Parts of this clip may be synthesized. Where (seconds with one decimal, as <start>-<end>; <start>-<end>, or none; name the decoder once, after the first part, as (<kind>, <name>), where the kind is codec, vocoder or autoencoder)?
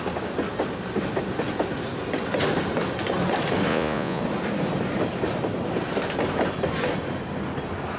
3.7-4.2 (vocoder, Vocos)